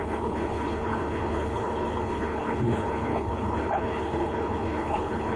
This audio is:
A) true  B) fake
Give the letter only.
B